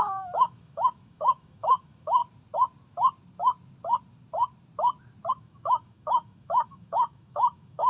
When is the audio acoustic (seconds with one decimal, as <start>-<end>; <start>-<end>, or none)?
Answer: 2.2-5.3